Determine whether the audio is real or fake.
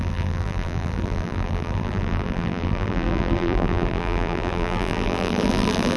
fake